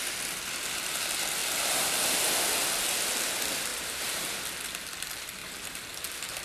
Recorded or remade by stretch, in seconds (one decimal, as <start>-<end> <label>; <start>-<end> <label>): 0.0-3.7 recorded; 3.7-4.4 remade; 4.4-6.4 recorded